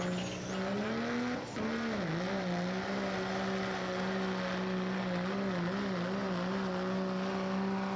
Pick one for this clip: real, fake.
real